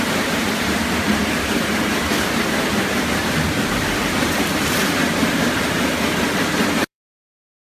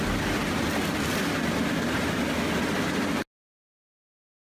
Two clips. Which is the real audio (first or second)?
second